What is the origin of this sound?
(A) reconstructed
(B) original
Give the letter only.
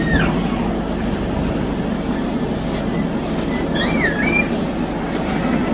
B